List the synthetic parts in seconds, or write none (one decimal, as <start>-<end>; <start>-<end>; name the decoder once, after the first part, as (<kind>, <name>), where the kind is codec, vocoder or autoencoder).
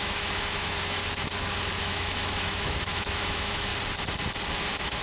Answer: 0.0-1.0 (autoencoder, DAC-VAE); 1.8-3.7; 4.6-5.0